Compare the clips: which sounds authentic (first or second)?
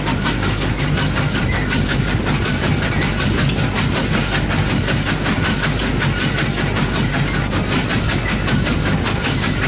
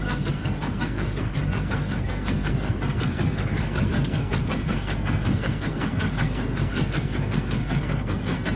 first